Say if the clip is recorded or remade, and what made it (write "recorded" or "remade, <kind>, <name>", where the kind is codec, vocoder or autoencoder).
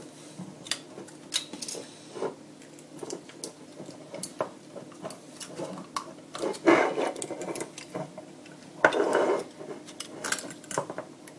recorded